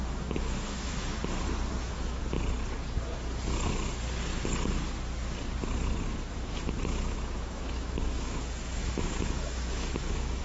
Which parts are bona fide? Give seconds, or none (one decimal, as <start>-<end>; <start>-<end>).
1.2-1.8; 2.2-6.3